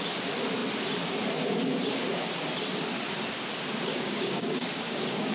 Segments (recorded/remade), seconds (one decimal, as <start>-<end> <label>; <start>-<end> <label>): 0.0-3.9 recorded; 3.9-5.3 remade